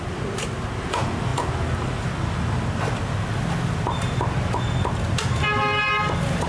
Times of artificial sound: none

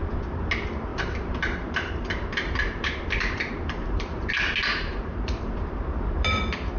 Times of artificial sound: 0.9-4.3 (vocoder, BigVGAN v2); 4.7-5.8

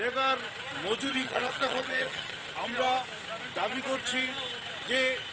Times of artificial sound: 1.1-2.3 (vocoder, HiFi-GAN)